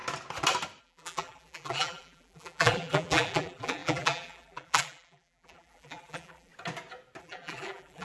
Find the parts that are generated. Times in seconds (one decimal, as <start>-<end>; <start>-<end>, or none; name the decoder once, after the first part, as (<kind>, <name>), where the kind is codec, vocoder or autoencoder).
0.8-6.5 (vocoder, BigVGAN v2); 7.2-8.0